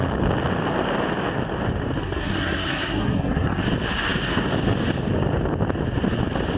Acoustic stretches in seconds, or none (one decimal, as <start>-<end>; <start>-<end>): 0.0-2.0; 3.6-6.6